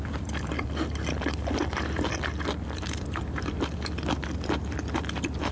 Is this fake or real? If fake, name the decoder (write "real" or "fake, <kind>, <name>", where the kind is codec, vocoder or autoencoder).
fake, vocoder, BigVGAN v2